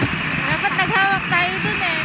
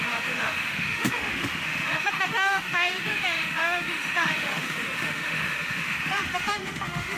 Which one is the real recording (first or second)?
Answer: first